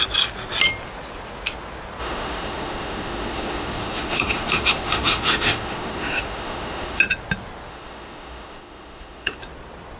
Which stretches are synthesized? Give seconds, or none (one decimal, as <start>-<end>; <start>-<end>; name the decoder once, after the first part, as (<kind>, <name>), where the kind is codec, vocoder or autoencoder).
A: 2.0-7.0 (autoencoder, DAC-VAE); 7.7-9.4